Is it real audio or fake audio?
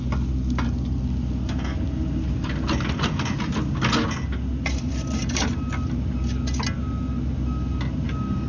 real